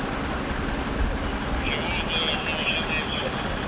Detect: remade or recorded recorded